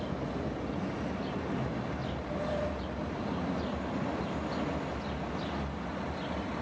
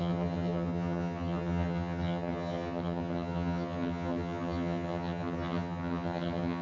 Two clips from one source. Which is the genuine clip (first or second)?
first